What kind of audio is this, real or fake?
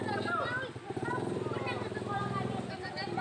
real